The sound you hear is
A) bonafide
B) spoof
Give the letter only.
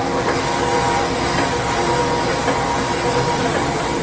A